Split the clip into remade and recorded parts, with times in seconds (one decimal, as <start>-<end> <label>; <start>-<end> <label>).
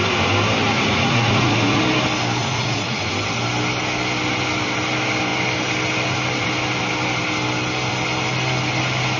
0.0-0.6 recorded; 0.6-1.8 remade; 1.8-2.4 recorded; 2.4-3.1 remade; 3.1-9.2 recorded